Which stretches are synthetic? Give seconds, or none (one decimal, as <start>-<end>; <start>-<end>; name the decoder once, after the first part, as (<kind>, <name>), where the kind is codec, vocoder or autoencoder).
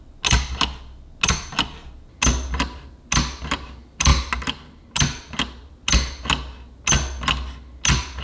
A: none